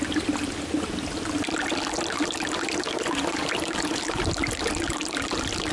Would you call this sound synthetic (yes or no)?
no